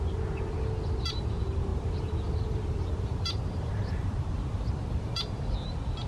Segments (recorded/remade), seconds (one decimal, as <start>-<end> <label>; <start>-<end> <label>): 0.0-1.7 recorded; 1.7-5.4 remade; 5.4-6.1 recorded